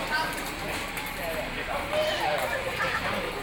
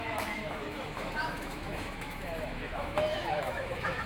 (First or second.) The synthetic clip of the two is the second